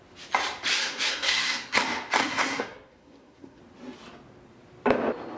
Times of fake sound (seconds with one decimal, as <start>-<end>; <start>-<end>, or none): 0.7-1.8; 2.2-3.6